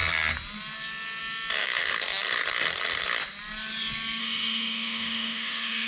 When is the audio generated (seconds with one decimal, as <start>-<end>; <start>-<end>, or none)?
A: 4.2-5.9

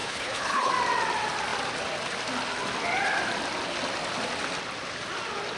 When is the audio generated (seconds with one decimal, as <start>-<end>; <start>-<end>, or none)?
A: 0.0-0.7

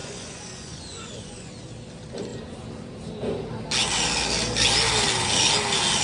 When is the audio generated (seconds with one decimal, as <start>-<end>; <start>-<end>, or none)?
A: 0.0-1.5

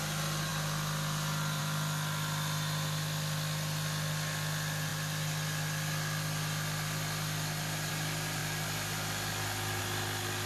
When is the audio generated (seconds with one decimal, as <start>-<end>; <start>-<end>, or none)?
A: 8.4-9.8

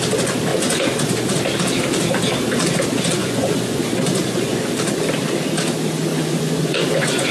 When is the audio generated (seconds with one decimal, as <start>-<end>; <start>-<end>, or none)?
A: 0.5-1.4; 3.2-4.7; 6.1-7.3

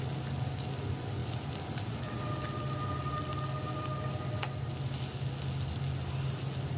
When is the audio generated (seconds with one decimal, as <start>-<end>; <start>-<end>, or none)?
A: none